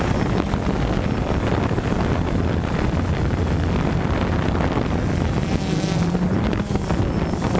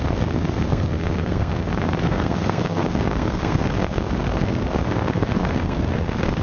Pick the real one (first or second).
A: first